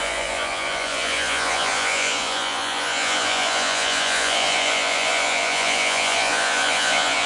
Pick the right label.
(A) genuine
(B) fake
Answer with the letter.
B